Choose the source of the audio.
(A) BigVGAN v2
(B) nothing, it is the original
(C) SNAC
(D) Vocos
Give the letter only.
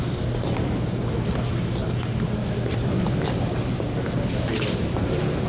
A